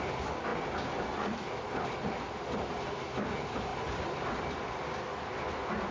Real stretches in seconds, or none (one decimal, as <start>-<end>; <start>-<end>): 0.0-5.9